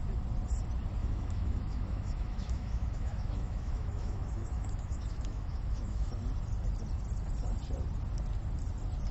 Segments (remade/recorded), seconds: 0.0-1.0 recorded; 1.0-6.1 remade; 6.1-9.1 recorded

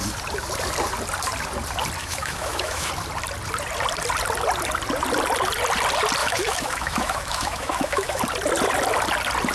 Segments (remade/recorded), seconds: 0.0-2.0 recorded; 2.0-2.9 remade; 2.9-6.2 recorded; 6.2-8.2 remade; 8.2-9.5 recorded